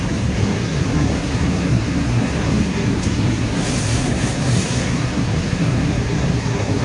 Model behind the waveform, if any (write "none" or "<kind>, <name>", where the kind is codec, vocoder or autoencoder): codec, SNAC